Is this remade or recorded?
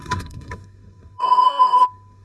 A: remade